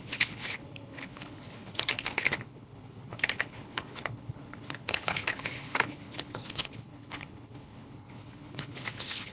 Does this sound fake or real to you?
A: fake